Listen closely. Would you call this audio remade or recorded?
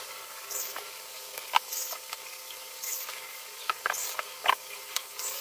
remade